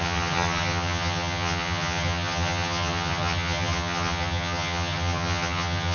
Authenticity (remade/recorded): remade